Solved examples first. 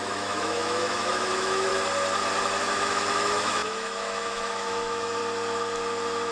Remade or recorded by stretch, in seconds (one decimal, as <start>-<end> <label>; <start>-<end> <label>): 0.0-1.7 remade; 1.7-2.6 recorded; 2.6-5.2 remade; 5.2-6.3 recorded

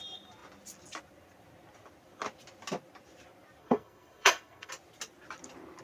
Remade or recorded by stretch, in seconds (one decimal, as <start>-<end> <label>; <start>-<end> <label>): 0.0-3.6 recorded; 3.6-4.7 remade; 4.7-5.8 recorded

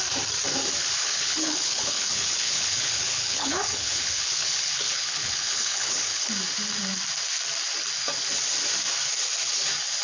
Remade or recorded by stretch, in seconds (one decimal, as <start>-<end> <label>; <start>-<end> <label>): 0.0-1.0 recorded; 1.0-6.3 remade; 6.3-10.0 recorded

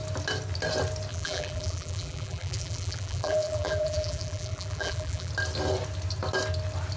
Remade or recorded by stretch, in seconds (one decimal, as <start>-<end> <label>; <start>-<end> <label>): 0.0-1.1 recorded; 1.1-5.3 remade; 5.3-7.0 recorded